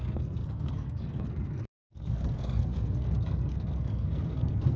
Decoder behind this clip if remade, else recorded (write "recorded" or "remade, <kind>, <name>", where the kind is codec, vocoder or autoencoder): remade, codec, SNAC